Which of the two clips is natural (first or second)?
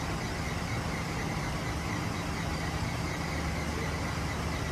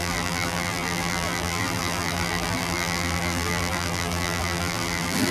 first